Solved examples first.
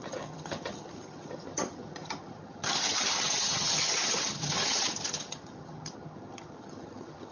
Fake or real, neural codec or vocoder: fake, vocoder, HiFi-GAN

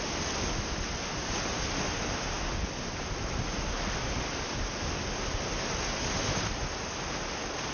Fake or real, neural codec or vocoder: real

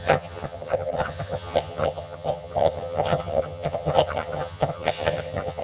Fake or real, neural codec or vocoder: fake, vocoder, HiFi-GAN